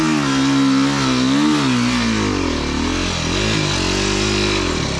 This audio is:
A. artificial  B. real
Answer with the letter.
B